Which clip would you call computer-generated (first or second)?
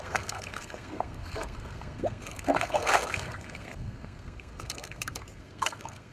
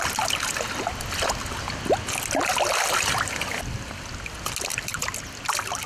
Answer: first